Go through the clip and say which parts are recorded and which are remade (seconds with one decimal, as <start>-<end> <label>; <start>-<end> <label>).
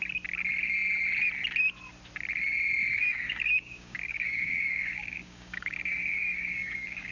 0.0-2.9 recorded; 2.9-7.1 remade